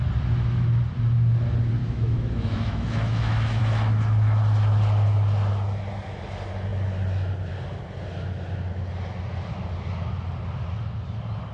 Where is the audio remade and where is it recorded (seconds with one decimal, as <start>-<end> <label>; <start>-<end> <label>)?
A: 0.0-1.8 recorded; 1.8-3.6 remade; 3.6-11.5 recorded